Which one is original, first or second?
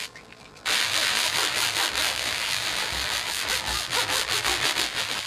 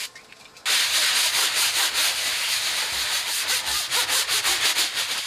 second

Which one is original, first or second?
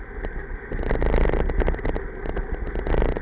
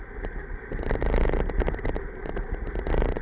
first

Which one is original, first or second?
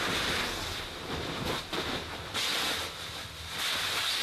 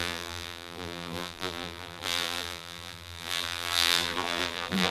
first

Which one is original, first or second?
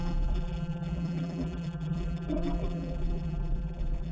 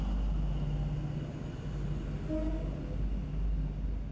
second